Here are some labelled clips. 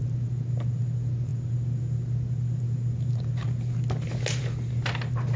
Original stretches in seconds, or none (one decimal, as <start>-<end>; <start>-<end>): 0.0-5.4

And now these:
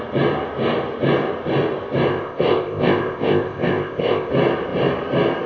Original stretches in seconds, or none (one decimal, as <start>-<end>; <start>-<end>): 0.0-2.1; 4.3-5.5

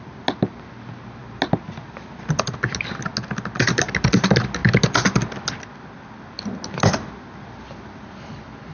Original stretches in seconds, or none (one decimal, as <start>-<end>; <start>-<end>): 0.0-8.7

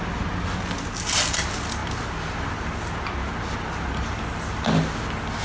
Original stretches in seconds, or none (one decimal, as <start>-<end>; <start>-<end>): 0.0-5.4

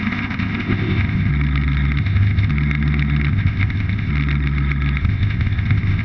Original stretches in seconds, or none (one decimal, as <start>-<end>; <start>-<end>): 1.3-2.0; 2.5-3.3; 4.1-5.0

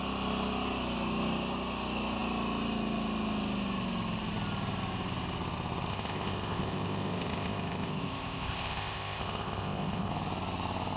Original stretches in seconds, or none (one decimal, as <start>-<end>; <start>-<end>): 0.0-5.9; 10.1-11.0

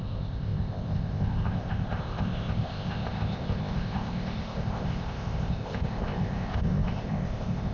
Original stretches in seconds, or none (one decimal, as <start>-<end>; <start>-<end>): none

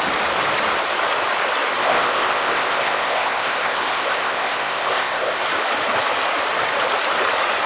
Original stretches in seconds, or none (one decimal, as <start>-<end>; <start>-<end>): 0.0-1.8; 5.4-7.7